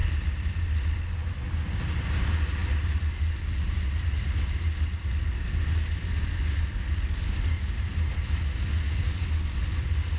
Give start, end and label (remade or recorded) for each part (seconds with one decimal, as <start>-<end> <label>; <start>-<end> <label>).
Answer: 0.0-10.2 recorded